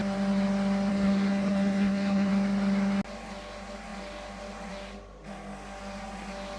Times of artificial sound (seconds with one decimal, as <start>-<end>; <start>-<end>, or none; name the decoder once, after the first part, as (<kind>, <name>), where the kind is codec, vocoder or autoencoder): 0.9-2.3 (codec, SNAC)